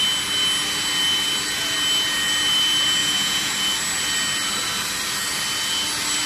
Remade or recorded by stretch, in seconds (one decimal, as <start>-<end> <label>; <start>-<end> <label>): 0.0-3.0 recorded; 3.0-3.5 remade; 3.5-6.3 recorded